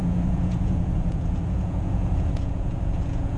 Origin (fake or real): fake